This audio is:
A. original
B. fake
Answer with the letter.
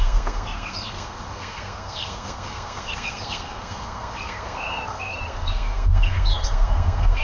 B